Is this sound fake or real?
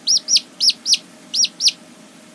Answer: real